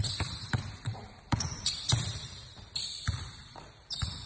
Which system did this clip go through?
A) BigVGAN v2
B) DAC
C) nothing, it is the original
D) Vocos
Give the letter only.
A